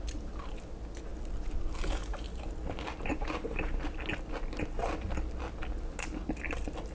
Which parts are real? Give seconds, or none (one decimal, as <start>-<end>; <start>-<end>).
0.0-6.9